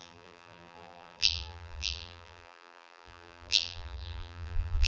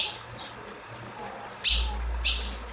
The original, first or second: second